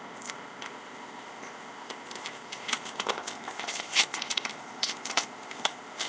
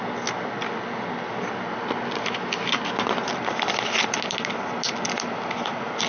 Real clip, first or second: second